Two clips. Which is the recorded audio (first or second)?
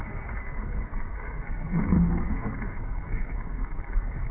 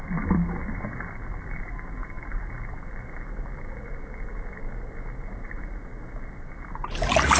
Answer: second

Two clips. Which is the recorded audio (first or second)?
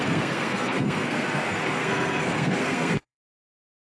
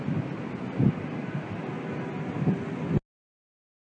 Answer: second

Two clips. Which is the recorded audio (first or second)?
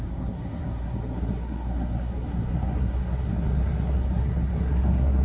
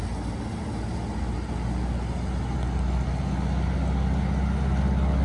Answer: second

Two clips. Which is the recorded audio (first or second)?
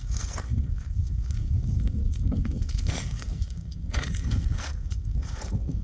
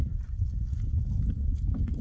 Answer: second